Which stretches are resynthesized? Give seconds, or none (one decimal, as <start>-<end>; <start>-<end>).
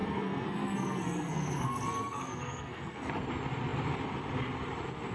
0.0-3.1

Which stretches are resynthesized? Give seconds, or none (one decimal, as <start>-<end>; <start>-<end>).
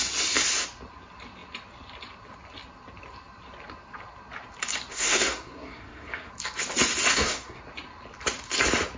4.9-6.3; 7.1-7.6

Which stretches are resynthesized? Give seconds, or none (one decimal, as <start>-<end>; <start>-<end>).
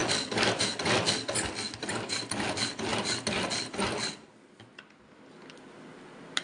none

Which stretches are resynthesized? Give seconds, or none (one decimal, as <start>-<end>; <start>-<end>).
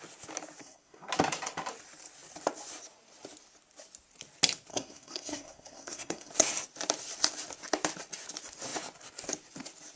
0.6-1.1; 4.7-6.3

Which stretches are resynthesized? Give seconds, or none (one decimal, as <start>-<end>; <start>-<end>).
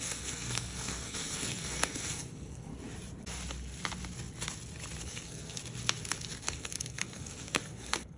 0.0-2.7; 5.0-5.6; 6.4-8.2